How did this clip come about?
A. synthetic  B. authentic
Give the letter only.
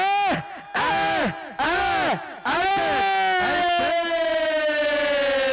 B